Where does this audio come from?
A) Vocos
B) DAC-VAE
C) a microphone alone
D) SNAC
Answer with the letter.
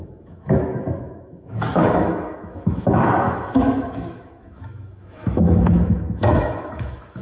B